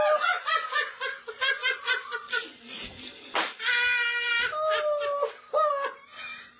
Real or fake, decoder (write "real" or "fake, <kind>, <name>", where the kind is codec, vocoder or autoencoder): real